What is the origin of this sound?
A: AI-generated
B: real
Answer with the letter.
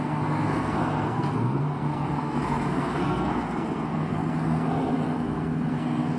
A